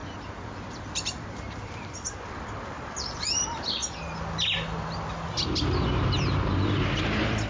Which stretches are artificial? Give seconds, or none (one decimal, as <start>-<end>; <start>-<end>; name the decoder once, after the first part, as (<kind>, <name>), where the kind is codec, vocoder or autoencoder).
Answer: 0.0-3.8 (vocoder, BigVGAN v2); 7.0-7.5